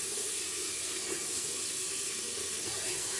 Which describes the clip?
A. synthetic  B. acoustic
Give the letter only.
A